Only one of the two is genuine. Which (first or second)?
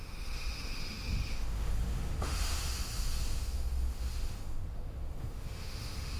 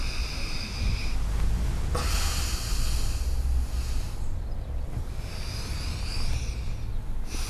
second